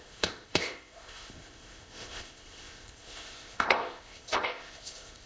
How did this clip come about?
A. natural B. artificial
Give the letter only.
B